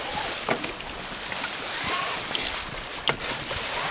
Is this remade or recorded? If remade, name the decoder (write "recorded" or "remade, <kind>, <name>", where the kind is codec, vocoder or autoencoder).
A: recorded